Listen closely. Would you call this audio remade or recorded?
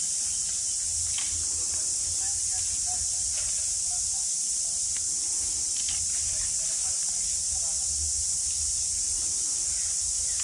recorded